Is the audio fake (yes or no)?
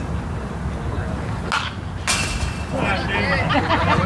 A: no